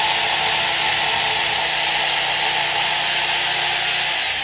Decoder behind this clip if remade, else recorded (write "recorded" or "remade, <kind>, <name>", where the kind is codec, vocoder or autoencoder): recorded